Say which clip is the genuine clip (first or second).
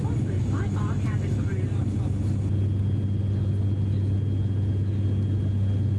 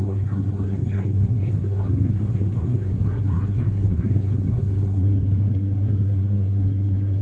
first